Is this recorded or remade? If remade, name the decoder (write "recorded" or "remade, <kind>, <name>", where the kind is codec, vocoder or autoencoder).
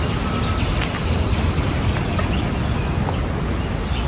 recorded